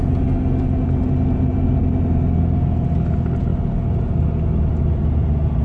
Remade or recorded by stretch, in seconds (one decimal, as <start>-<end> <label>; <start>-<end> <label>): 0.0-5.6 recorded